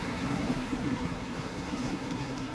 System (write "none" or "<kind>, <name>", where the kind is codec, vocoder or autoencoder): codec, SNAC